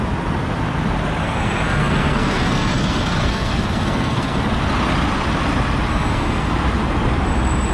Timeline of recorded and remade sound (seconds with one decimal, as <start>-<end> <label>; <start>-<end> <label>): 0.0-1.2 recorded; 1.2-4.4 remade; 4.4-5.9 recorded; 5.9-6.5 remade; 6.5-7.7 recorded